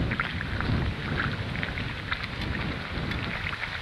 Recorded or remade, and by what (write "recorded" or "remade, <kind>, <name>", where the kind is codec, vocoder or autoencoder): recorded